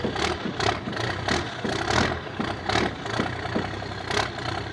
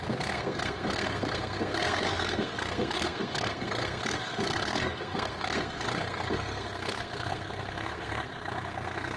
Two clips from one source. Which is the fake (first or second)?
second